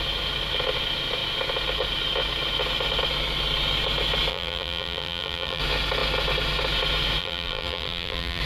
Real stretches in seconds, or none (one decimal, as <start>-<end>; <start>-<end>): 0.0-4.3; 5.6-7.2